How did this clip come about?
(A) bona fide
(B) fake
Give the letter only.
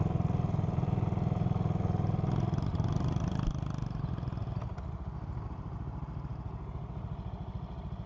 A